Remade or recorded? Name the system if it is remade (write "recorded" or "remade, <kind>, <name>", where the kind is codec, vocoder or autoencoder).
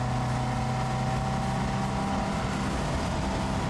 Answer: recorded